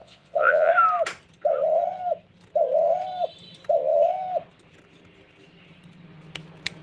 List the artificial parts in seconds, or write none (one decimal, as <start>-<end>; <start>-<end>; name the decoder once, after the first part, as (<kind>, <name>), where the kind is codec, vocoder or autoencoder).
0.0-0.7 (vocoder, Vocos)